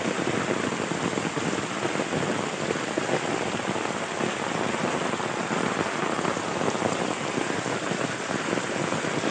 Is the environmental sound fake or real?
real